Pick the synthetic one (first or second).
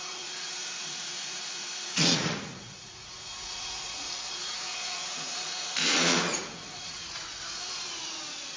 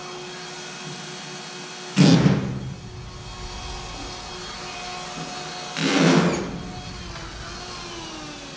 first